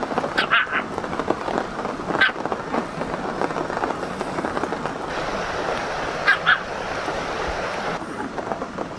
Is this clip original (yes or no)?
yes